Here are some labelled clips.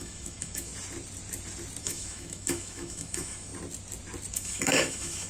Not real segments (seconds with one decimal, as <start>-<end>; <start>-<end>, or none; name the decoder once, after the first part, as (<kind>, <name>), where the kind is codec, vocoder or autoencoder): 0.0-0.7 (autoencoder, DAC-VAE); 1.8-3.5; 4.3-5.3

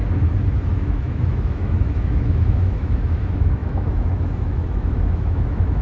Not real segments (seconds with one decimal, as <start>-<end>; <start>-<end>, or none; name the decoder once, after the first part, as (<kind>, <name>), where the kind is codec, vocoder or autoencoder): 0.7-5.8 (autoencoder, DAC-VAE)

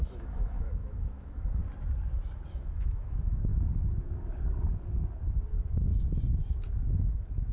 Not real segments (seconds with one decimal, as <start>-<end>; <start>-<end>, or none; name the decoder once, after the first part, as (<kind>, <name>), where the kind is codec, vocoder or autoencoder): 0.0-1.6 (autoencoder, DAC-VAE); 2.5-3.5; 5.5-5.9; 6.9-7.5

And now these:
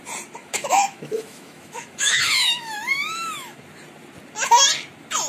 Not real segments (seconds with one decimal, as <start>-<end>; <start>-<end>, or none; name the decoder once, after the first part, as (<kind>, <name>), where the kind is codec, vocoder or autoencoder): 0.4-3.6 (autoencoder, DAC-VAE)

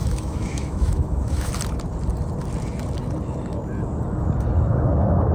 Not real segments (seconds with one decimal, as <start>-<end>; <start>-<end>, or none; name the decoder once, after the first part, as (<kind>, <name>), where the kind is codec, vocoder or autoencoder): 0.0-1.5 (autoencoder, DAC-VAE)